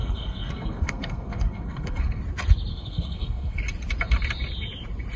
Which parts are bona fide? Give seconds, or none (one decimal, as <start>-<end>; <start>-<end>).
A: 2.2-2.7; 3.6-5.2